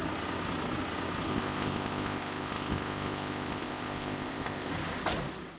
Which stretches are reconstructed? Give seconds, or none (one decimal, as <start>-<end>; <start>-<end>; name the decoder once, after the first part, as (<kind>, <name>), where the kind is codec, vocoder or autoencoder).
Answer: 1.3-4.7 (codec, ZipCodec)